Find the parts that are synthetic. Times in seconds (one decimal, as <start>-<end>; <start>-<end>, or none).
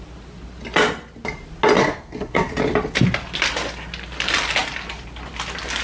1.8-2.5